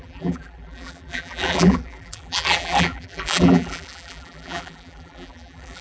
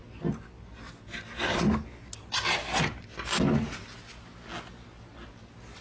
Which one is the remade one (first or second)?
first